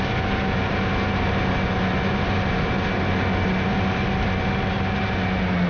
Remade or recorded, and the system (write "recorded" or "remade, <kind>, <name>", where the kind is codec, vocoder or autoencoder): recorded